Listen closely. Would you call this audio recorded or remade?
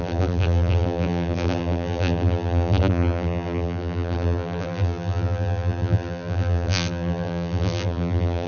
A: remade